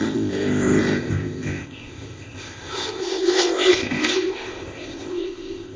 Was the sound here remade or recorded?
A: remade